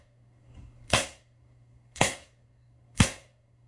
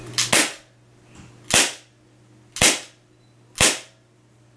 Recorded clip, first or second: second